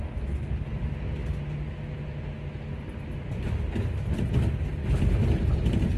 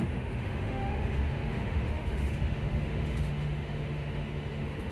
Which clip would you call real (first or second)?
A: first